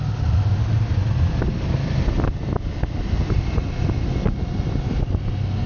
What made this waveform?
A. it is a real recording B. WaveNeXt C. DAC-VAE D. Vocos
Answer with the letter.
A